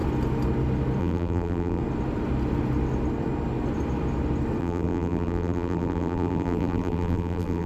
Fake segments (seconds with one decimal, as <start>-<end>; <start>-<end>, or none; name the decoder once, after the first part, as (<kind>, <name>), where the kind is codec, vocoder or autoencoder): 1.0-1.8 (vocoder, BigVGAN v2); 4.6-7.7